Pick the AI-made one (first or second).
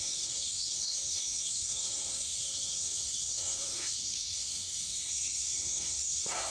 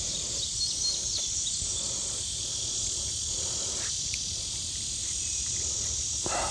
first